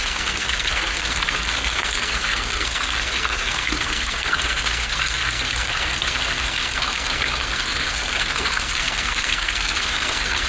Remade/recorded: remade